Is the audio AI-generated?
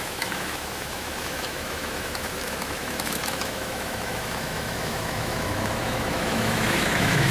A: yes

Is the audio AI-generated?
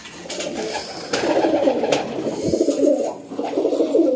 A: no